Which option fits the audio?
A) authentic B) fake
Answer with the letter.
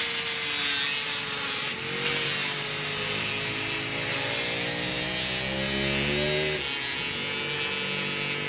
A